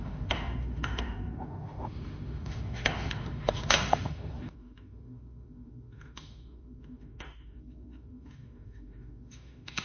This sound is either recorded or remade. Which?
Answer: remade